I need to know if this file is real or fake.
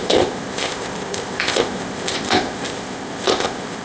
fake